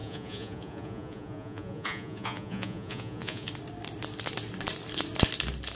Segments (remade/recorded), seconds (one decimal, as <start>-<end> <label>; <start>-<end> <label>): 0.0-3.5 remade; 3.5-5.8 recorded